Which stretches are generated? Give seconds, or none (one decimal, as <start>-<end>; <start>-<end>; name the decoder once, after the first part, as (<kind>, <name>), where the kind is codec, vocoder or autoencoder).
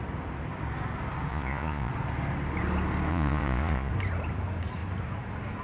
1.3-1.9 (vocoder, Vocos); 3.1-3.9